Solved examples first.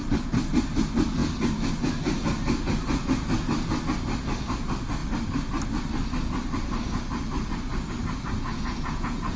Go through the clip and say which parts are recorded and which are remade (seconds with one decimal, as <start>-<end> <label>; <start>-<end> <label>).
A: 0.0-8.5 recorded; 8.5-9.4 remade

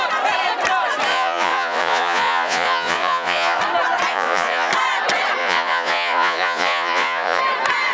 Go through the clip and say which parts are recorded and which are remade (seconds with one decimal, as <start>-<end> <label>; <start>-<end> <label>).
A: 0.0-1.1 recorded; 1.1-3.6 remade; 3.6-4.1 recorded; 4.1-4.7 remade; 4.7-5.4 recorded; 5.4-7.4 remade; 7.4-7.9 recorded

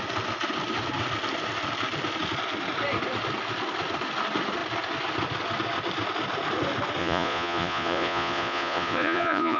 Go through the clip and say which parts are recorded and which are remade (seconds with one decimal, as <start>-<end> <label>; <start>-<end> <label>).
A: 0.0-7.0 recorded; 7.0-9.6 remade

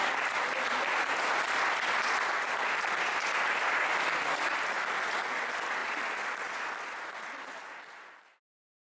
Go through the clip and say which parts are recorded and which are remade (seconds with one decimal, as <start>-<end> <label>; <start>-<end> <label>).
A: 0.0-8.9 recorded

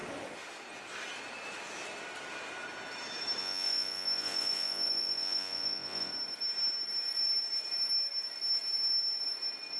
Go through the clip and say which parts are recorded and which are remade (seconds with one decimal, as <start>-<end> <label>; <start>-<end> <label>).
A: 0.0-3.4 recorded; 3.4-6.1 remade; 6.1-9.8 recorded

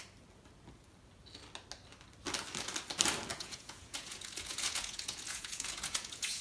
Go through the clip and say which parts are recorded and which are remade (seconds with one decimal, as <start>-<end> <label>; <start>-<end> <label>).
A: 0.0-3.3 recorded; 3.3-6.4 remade

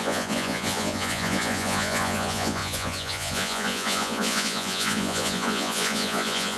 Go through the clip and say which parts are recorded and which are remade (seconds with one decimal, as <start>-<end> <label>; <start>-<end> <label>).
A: 0.0-6.6 remade